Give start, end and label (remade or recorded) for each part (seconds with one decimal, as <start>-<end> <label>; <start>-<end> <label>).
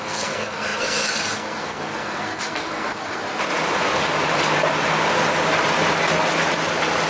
0.0-3.2 remade; 3.2-7.1 recorded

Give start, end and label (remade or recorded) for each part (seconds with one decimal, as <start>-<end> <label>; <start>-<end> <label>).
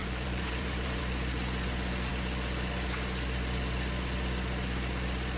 0.0-1.0 remade; 1.0-5.4 recorded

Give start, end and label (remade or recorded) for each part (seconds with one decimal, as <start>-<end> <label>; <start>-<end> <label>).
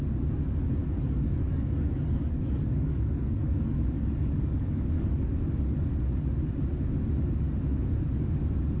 0.0-0.8 recorded; 0.8-5.3 remade; 5.3-8.8 recorded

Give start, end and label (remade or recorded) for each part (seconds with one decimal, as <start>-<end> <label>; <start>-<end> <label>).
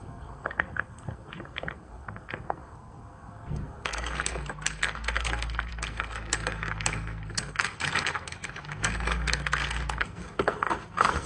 0.0-11.3 remade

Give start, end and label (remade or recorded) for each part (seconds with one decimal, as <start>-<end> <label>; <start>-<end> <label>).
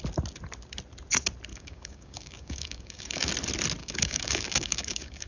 0.0-1.5 recorded; 1.5-3.3 remade; 3.3-3.8 recorded; 3.8-5.3 remade